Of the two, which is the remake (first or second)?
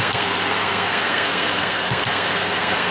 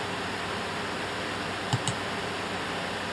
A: first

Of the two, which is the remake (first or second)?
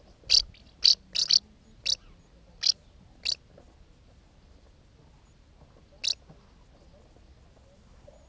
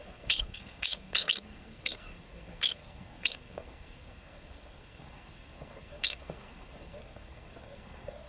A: second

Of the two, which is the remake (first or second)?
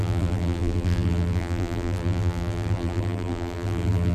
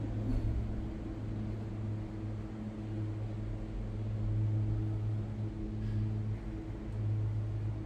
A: first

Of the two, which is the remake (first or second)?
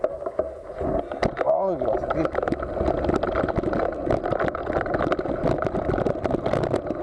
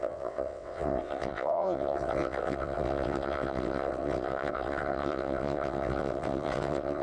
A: second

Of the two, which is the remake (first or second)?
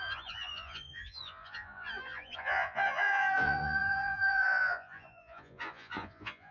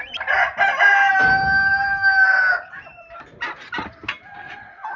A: first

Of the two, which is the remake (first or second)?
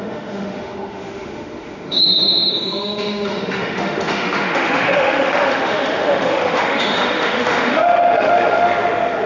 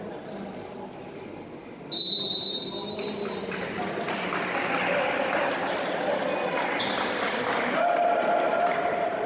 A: first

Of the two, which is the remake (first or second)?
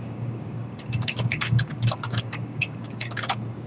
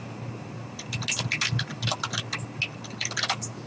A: first